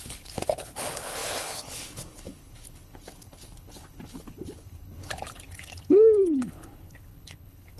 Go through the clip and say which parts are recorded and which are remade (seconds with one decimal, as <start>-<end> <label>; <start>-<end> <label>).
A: 0.0-7.8 remade